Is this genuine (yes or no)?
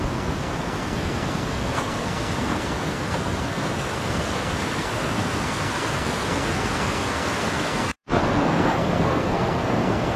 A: no